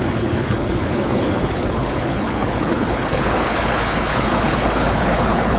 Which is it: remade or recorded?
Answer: remade